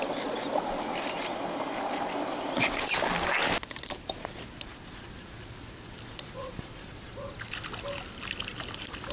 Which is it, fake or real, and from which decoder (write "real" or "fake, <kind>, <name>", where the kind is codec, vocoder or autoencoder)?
real